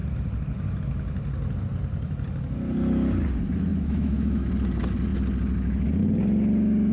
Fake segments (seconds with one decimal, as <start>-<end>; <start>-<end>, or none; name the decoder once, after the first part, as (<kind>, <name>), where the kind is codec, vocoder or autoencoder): 3.7-4.5 (autoencoder, DAC-VAE)